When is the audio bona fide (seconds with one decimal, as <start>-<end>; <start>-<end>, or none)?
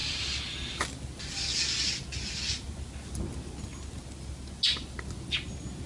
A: 0.0-5.9